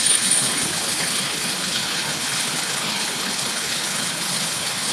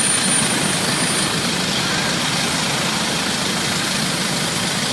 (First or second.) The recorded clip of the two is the second